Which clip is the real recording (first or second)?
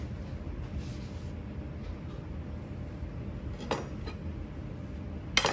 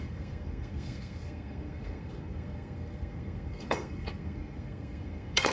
first